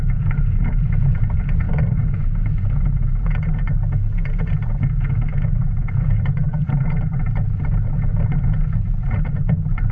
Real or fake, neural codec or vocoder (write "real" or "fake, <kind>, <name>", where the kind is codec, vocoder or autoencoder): fake, vocoder, Vocos